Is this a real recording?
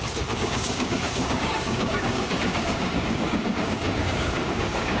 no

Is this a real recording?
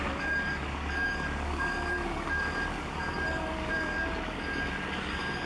no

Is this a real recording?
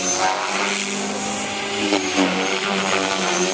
yes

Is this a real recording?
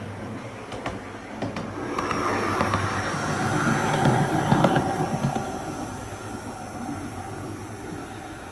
yes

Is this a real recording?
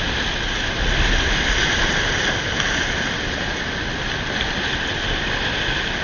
yes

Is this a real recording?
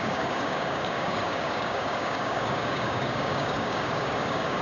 no